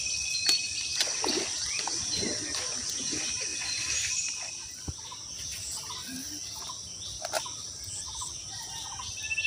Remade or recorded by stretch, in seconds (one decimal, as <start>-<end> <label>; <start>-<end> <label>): 0.0-3.5 recorded; 3.5-4.5 remade; 4.5-9.5 recorded